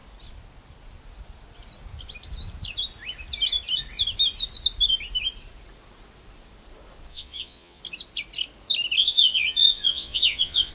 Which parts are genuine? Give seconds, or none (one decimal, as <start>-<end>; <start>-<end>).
0.0-7.1; 7.8-9.0